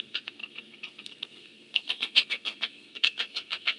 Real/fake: fake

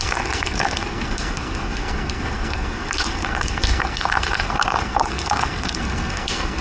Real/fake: fake